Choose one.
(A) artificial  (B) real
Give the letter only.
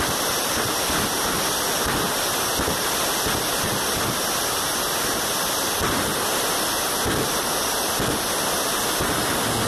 B